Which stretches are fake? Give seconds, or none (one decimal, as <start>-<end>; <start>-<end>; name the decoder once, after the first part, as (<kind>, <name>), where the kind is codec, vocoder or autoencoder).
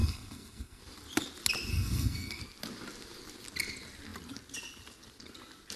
0.0-0.8 (codec, SNAC); 1.7-2.4